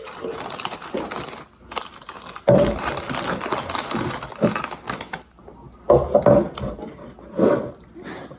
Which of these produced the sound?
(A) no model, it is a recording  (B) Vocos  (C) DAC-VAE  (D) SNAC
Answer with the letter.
A